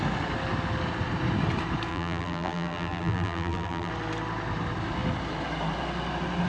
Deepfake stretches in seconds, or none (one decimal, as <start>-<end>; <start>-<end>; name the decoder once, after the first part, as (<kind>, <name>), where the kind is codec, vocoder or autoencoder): 1.9-3.9 (vocoder, BigVGAN v2)